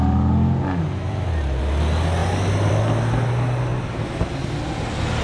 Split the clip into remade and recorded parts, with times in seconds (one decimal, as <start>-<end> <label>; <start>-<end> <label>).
0.0-1.0 recorded; 1.0-1.6 remade; 1.6-3.7 recorded; 3.7-4.5 remade; 4.5-5.2 recorded